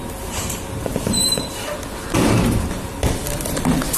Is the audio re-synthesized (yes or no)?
yes